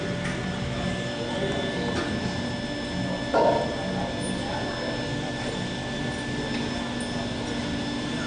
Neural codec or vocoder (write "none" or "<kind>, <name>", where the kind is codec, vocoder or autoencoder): none